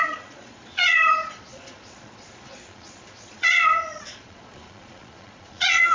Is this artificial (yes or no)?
yes